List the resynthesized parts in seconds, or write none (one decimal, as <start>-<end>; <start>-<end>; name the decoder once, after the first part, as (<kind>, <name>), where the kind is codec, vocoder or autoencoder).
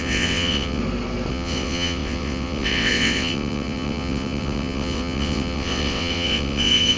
0.0-0.8 (vocoder, WaveNeXt); 1.3-7.0